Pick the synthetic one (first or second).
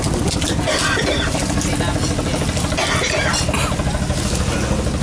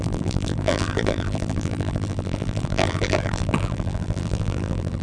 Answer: second